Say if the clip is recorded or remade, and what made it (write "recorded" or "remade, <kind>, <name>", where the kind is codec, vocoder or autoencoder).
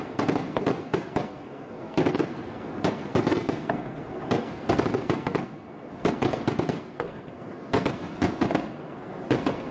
remade, codec, SNAC